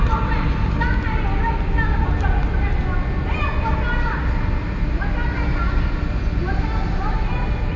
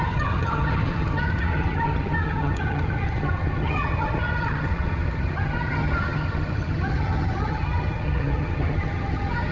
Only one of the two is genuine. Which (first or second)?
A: first